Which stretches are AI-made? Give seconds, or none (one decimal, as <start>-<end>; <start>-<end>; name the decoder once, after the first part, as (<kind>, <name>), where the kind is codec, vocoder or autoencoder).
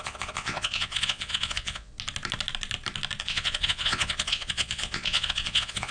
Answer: 0.0-1.9 (vocoder, Vocos); 3.2-5.9